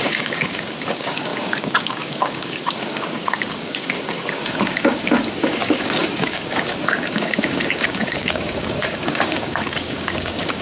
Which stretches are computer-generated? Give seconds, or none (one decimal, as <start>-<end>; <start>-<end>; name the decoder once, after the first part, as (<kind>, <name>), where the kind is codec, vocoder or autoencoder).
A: 0.0-10.6 (codec, DAC)